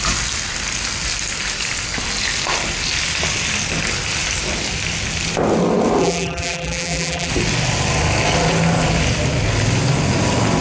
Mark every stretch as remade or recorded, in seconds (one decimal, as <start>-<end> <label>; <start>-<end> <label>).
0.0-6.0 recorded; 6.0-7.3 remade; 7.3-10.6 recorded